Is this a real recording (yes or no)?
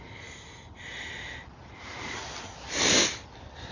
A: yes